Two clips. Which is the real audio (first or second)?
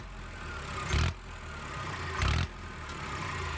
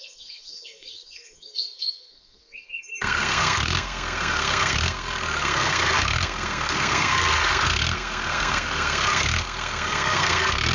first